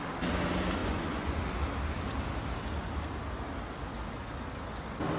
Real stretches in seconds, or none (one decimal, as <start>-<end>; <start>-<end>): 0.0-0.8; 1.4-5.2

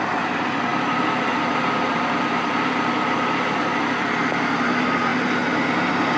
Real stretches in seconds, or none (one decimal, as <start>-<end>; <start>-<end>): 0.0-6.2

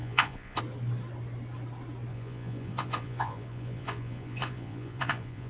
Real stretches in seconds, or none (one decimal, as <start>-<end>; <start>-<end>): 0.6-2.1

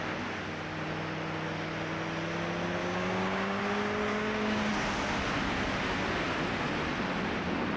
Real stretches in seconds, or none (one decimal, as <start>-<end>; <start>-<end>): 0.0-2.8; 3.6-4.1; 4.7-7.8

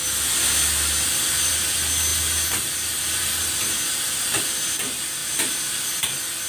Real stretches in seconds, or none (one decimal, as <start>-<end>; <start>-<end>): 0.0-6.5

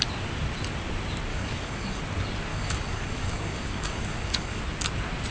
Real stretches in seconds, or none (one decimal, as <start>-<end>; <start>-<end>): 0.0-1.3; 2.0-2.5; 4.6-5.3